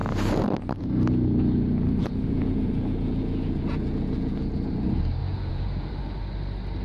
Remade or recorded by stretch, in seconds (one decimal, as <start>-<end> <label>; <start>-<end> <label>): 0.0-2.0 recorded; 2.0-4.7 remade; 4.7-5.2 recorded; 5.2-5.9 remade; 5.9-6.8 recorded